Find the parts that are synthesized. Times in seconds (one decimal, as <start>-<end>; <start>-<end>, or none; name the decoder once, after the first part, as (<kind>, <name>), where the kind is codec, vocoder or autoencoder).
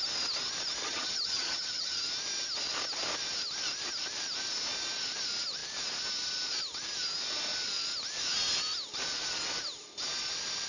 0.8-2.0 (vocoder, HiFi-GAN)